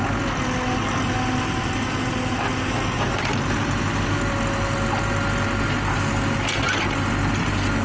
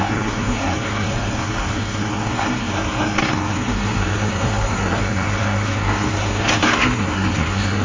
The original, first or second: first